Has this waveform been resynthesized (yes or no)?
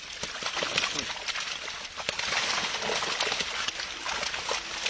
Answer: no